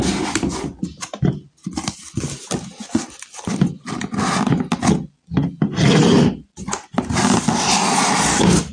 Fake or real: real